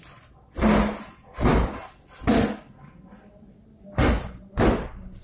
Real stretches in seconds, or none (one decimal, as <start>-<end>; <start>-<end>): 0.0-5.2